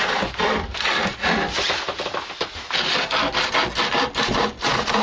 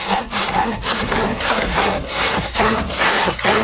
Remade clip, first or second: second